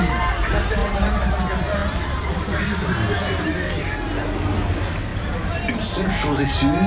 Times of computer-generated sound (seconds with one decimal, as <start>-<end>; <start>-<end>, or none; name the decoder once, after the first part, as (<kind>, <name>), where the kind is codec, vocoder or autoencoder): 0.8-1.3 (vocoder, BigVGAN v2); 1.8-2.6; 5.1-5.7

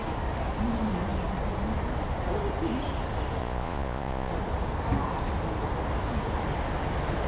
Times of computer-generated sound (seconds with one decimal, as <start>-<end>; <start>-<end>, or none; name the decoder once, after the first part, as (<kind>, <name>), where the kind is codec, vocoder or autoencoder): 3.4-4.3 (vocoder, Vocos)